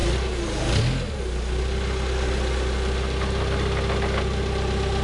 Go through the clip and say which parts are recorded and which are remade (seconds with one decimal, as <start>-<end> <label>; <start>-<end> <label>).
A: 0.0-5.0 recorded